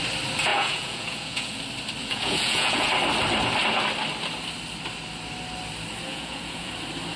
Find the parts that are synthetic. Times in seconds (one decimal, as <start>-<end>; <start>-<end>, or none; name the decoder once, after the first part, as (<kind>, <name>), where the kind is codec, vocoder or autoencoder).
0.5-1.6 (vocoder, Vocos); 2.0-2.9; 6.1-6.7